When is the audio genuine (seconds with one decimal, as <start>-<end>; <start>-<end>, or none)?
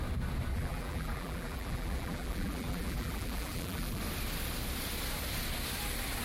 0.0-0.5; 4.0-6.2